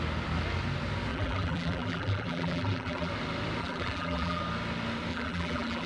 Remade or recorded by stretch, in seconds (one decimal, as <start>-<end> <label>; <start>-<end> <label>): 0.0-1.1 recorded; 1.1-3.1 remade; 3.1-3.6 recorded; 3.6-4.4 remade; 4.4-5.1 recorded; 5.1-5.9 remade